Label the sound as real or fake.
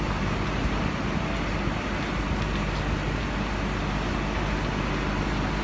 real